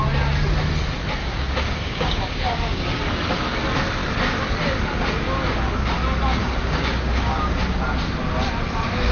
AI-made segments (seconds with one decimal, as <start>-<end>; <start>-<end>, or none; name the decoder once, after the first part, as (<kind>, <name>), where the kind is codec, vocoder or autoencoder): 1.2-3.0 (codec, DAC); 6.4-7.6